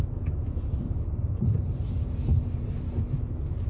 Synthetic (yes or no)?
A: no